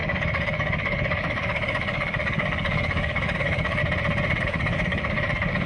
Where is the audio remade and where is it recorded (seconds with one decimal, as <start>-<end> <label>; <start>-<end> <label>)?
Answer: 0.0-3.8 remade; 3.8-4.4 recorded; 4.4-5.7 remade